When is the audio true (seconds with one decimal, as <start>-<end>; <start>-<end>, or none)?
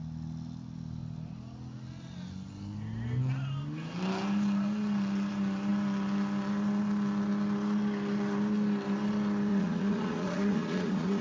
0.0-9.5